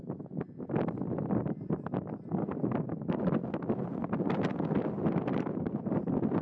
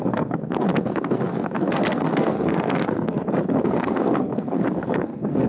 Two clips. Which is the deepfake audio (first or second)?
second